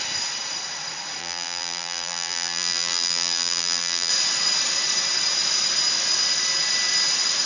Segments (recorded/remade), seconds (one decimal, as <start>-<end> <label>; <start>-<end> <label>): 0.0-1.2 recorded; 1.2-4.1 remade; 4.1-7.5 recorded